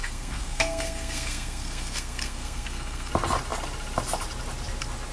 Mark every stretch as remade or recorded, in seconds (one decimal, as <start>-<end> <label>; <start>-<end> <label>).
0.0-3.1 remade; 3.1-5.1 recorded